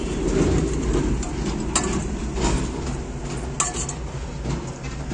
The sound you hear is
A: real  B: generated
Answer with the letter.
A